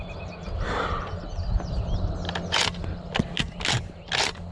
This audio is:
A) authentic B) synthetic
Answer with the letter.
A